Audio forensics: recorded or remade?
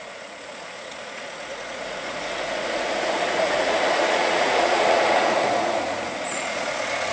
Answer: remade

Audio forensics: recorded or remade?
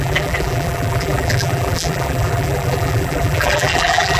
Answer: remade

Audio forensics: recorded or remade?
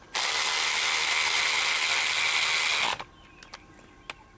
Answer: recorded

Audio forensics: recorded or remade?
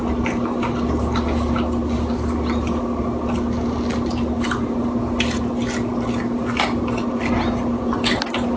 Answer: recorded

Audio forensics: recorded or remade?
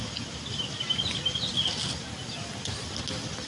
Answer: recorded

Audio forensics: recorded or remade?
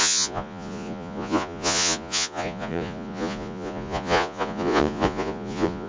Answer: remade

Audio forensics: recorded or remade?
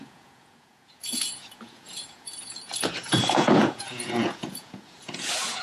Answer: remade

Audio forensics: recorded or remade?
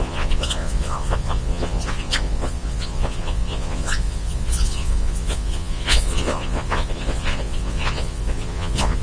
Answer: remade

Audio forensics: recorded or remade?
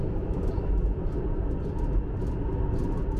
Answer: recorded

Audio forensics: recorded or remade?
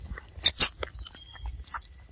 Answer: recorded